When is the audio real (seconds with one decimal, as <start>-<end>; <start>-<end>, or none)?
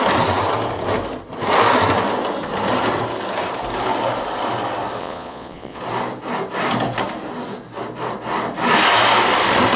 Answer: 0.0-5.0; 5.8-9.8